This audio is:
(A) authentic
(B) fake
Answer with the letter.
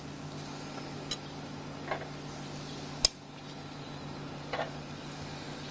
A